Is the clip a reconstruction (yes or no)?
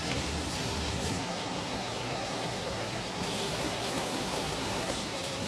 yes